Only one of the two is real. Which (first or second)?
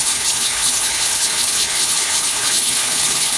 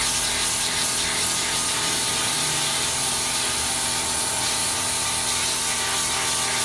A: second